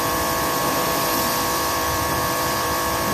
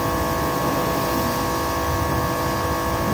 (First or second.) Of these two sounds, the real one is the second